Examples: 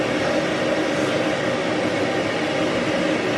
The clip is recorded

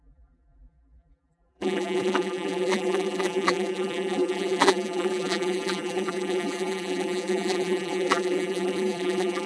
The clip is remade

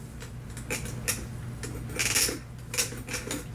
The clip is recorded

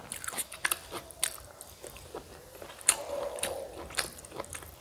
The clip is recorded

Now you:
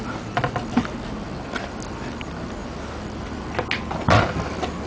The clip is recorded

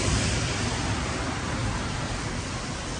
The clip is remade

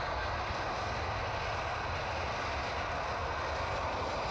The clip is recorded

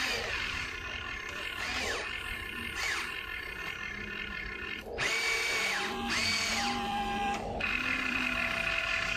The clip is remade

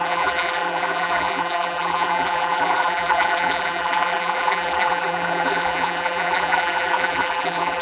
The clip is remade